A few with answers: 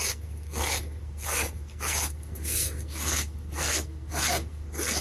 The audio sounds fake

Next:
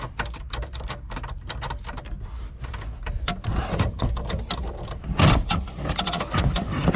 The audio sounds real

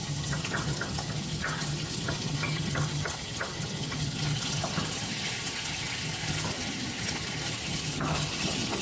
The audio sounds fake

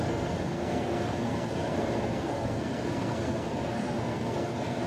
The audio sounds fake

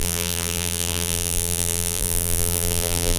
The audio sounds fake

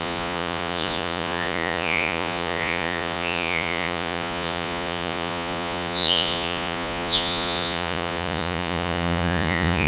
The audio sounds fake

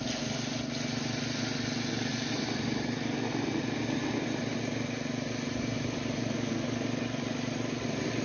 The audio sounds real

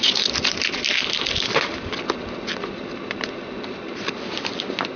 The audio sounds real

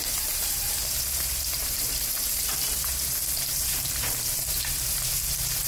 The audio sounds fake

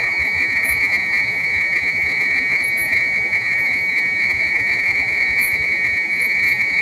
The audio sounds fake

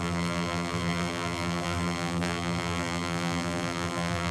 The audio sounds fake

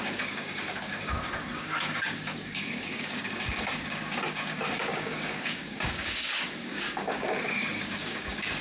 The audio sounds fake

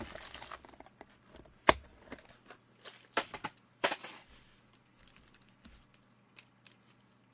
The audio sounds real